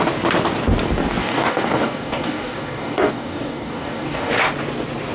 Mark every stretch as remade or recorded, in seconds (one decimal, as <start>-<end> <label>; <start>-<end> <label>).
0.0-1.2 recorded; 1.2-4.3 remade; 4.3-5.1 recorded